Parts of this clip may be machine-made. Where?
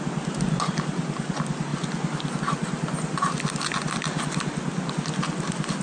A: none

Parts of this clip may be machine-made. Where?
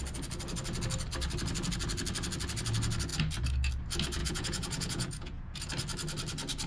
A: 4.2-5.7